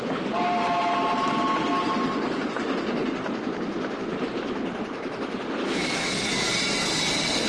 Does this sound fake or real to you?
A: real